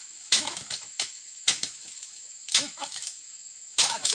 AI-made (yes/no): yes